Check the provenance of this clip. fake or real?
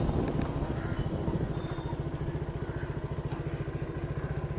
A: real